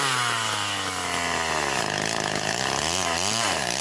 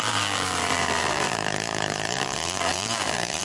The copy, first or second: second